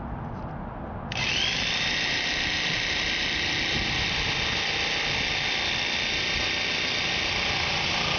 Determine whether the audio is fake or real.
real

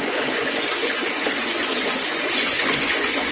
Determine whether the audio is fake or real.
fake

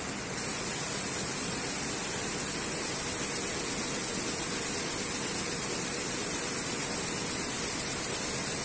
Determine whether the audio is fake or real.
real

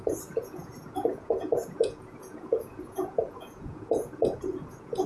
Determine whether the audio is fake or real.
fake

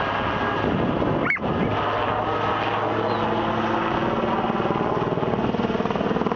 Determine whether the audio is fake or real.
real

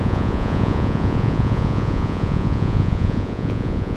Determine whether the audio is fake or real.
fake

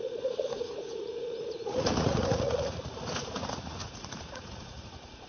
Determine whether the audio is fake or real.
fake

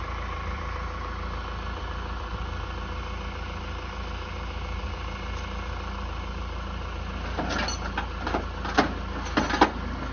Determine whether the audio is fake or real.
real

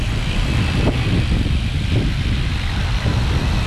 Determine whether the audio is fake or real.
real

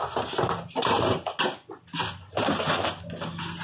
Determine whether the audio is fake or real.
real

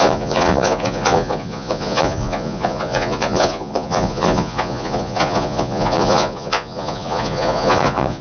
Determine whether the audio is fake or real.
fake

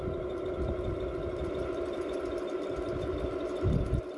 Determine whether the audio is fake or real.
real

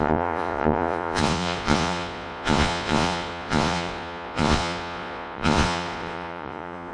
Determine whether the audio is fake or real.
fake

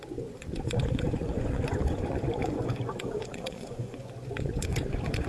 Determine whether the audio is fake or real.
fake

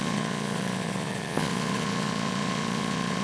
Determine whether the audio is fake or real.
fake